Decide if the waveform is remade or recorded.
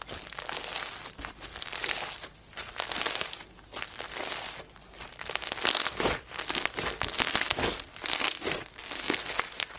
recorded